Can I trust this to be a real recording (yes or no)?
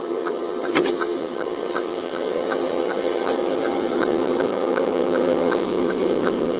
no